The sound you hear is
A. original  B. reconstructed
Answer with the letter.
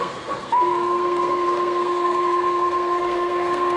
B